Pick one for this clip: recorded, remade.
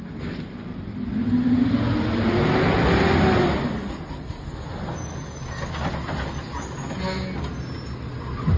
recorded